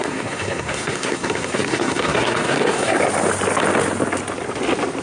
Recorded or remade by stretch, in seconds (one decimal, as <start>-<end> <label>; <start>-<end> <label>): 0.0-3.0 remade; 3.0-5.0 recorded